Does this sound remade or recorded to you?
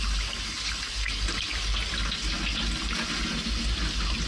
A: recorded